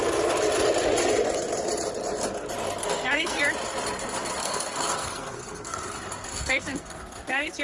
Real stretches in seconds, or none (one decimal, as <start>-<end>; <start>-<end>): 0.0-2.8; 3.4-4.4; 5.8-6.3